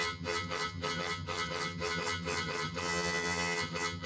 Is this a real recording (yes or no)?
no